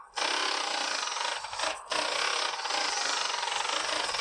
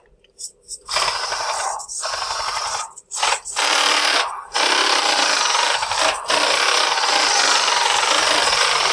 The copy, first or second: second